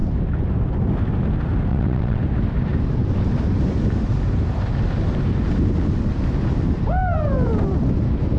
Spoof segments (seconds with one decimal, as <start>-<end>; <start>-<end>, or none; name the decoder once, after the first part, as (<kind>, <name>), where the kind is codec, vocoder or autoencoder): 1.7-2.2 (vocoder, WaveNeXt)